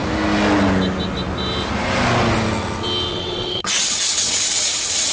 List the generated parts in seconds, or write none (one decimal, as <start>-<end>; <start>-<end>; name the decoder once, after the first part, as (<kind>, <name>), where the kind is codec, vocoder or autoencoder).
3.1-5.1 (vocoder, WaveNeXt)